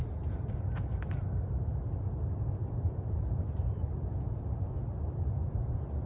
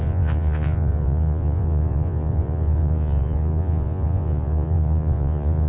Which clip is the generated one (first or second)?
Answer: second